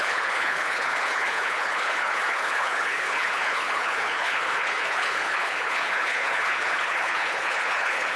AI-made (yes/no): yes